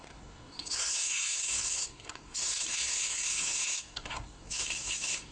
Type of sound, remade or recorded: remade